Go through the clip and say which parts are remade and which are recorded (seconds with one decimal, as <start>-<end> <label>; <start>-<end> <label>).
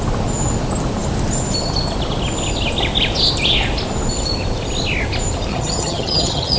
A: 0.0-5.5 recorded; 5.5-6.6 remade